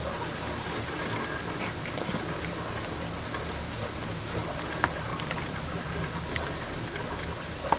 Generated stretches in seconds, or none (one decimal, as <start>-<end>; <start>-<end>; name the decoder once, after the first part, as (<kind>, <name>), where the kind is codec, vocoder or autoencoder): 5.1-6.1 (vocoder, BigVGAN v2)